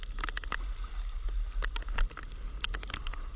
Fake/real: real